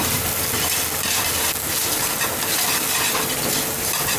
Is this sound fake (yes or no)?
no